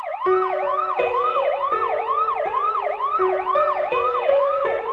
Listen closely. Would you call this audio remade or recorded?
remade